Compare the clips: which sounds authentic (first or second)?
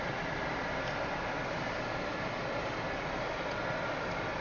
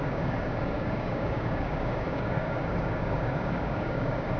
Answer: first